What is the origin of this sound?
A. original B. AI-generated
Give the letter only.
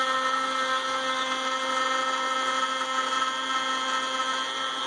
A